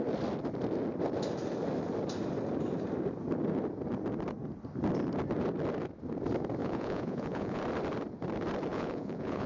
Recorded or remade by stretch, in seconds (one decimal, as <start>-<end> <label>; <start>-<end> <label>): 0.0-6.6 recorded; 6.6-7.6 remade; 7.6-8.7 recorded; 8.7-9.5 remade